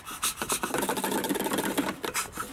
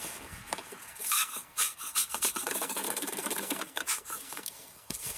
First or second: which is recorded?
first